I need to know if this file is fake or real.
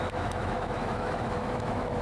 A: fake